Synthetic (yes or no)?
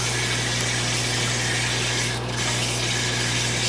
no